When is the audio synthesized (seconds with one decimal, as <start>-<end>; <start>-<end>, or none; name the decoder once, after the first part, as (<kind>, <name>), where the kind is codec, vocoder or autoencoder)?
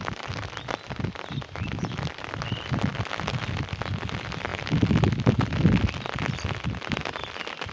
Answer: none